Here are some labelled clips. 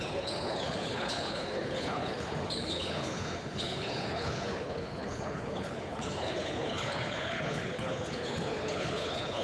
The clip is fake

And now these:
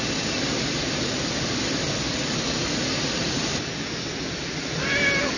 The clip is real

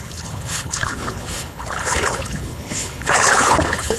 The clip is fake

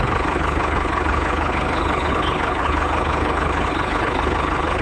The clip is fake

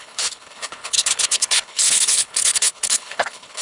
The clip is fake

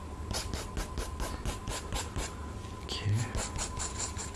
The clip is real